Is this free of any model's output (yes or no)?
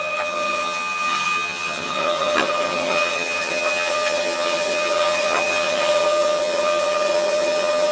no